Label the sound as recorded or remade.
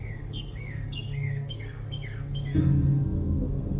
remade